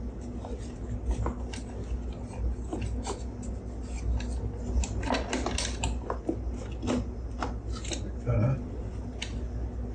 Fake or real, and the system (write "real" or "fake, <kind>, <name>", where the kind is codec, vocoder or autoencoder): real